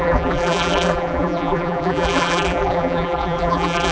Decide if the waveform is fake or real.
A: fake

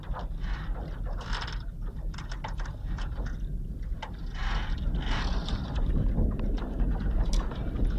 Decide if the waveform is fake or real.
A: real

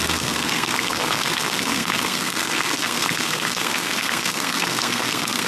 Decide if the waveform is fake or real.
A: fake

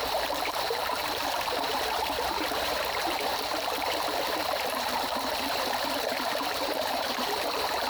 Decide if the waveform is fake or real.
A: fake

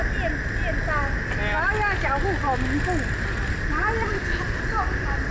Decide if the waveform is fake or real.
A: real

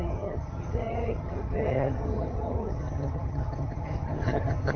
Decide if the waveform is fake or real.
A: fake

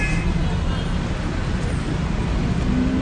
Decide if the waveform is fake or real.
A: real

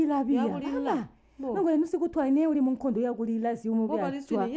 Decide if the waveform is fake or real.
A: real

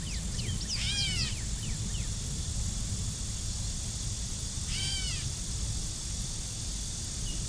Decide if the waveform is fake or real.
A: real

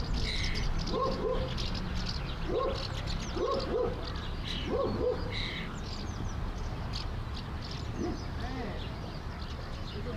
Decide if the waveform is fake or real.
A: real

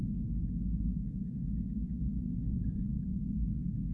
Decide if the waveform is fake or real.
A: fake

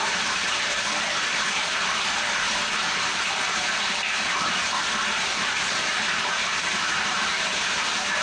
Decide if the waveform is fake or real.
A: fake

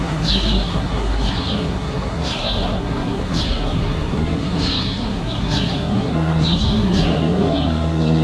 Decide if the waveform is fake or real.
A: fake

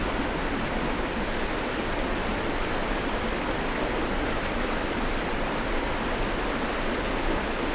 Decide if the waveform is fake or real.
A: real